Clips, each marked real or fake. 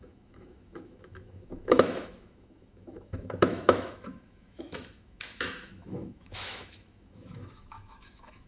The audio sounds fake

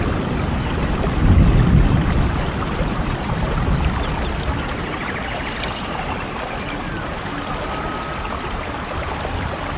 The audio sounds real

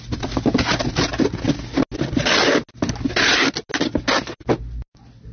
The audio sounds real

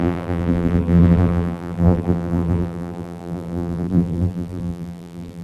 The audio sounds fake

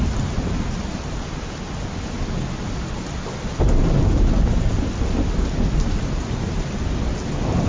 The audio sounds real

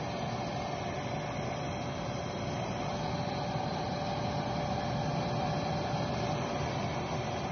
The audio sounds real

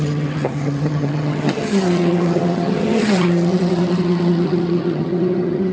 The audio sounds fake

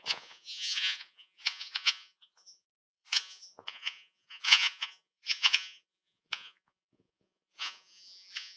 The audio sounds fake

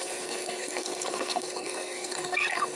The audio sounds fake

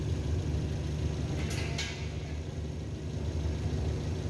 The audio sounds real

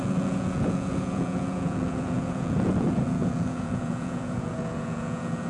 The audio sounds fake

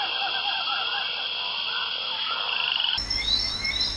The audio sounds real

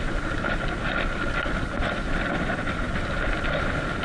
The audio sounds real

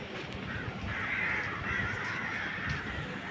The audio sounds real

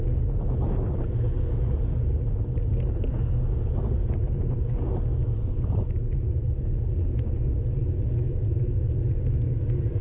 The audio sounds real